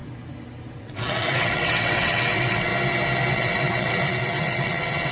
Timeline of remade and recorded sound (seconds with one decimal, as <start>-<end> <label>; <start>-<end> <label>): 0.0-0.8 recorded; 0.8-2.7 remade; 2.7-3.3 recorded; 3.3-5.1 remade